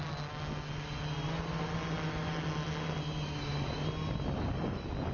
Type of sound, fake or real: real